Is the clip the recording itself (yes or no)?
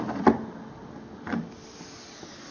yes